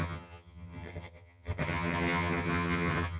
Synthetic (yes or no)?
yes